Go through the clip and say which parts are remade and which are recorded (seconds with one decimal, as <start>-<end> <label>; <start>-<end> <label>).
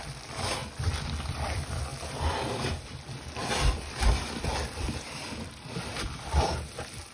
0.0-0.6 remade; 0.6-1.3 recorded; 1.3-7.1 remade